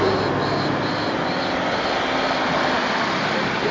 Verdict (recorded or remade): recorded